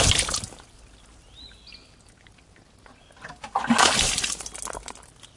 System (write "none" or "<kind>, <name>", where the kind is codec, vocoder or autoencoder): none